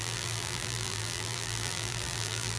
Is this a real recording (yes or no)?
no